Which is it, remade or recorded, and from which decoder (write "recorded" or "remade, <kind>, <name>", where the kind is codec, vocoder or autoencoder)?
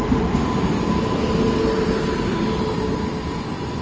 recorded